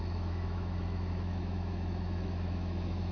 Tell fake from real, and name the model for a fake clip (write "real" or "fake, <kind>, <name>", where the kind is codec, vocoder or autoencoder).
fake, autoencoder, DAC-VAE